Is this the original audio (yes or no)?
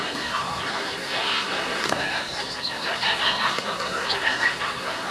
no